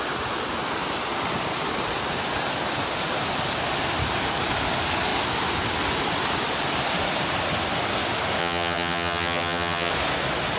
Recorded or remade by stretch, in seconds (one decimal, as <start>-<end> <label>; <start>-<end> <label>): 0.0-8.4 recorded; 8.4-9.9 remade; 9.9-10.6 recorded